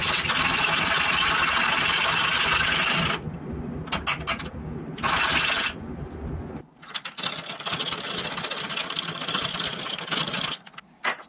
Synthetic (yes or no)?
no